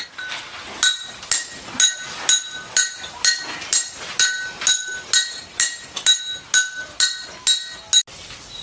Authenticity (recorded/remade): recorded